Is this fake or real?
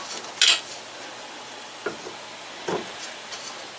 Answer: real